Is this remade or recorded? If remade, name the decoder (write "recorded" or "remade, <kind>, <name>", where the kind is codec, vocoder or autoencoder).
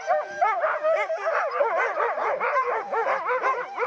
remade, vocoder, BigVGAN v2